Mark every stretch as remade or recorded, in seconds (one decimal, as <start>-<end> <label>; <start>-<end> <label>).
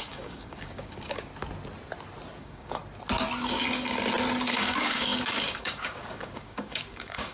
0.0-1.3 remade; 1.3-2.4 recorded; 2.4-2.8 remade; 2.8-4.5 recorded; 4.5-7.3 remade